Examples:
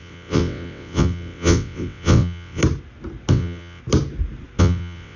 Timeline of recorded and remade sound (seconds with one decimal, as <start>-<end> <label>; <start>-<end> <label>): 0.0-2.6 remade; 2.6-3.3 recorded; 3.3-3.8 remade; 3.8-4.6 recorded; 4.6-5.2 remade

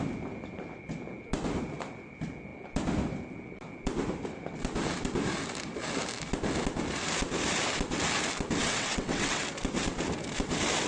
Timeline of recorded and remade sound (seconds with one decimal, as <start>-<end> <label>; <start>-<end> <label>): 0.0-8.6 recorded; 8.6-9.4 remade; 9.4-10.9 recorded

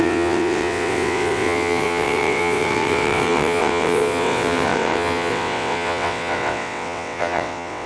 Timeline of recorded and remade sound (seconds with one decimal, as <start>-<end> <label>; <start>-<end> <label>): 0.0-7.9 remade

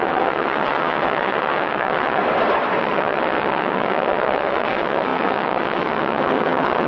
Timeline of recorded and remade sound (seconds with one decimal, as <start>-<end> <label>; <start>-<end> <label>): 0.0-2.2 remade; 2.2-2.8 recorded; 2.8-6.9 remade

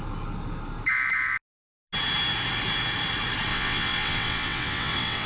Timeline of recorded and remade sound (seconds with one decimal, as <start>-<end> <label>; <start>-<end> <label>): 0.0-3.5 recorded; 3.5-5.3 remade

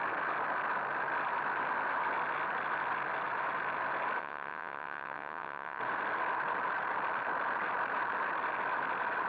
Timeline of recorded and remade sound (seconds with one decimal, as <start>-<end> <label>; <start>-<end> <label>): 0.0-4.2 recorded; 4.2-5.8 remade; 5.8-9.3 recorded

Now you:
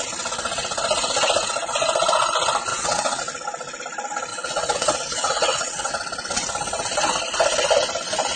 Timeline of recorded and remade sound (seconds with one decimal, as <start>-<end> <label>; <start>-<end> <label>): 0.0-2.7 recorded; 2.7-3.2 remade; 3.2-4.3 recorded; 4.3-5.9 remade; 5.9-8.4 recorded

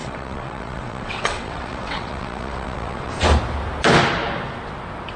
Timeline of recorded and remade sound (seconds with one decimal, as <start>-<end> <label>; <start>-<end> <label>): 0.0-3.1 remade; 3.1-5.2 recorded